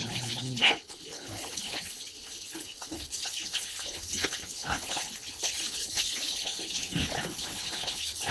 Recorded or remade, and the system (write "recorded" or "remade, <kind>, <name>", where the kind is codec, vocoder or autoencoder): remade, codec, HILCodec